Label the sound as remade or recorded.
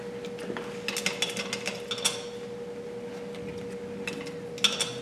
recorded